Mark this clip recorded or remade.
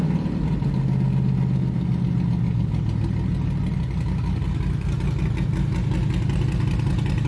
recorded